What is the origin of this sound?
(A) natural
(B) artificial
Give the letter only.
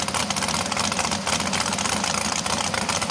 A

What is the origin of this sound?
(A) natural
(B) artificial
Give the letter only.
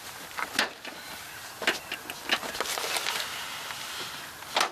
A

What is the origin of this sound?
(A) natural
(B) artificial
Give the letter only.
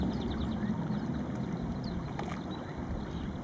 A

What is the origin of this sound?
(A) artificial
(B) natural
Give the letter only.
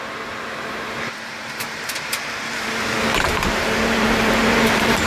A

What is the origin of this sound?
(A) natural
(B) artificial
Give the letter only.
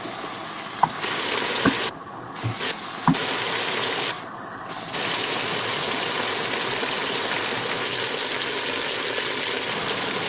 A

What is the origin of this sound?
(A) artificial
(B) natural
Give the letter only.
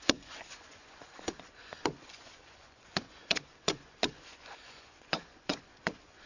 A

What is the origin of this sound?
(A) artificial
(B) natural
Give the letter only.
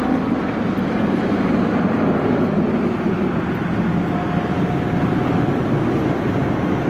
B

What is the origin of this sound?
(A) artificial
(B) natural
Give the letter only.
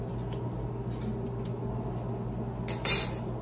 B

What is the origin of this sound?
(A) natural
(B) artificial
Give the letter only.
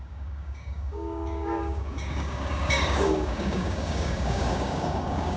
B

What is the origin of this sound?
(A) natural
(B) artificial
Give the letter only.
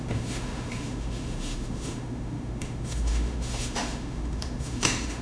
B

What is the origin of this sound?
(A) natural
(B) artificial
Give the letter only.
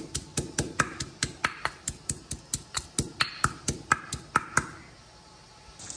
A